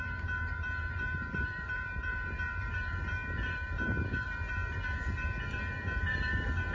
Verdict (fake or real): fake